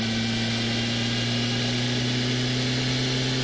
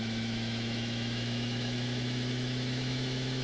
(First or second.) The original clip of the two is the first